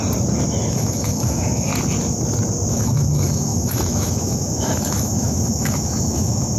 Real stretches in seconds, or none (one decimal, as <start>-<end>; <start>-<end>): 0.0-0.7; 1.7-2.7